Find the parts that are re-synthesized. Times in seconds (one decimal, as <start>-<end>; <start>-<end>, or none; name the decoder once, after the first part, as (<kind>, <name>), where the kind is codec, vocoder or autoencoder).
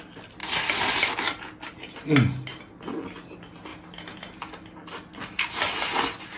0.4-1.0 (vocoder, BigVGAN v2)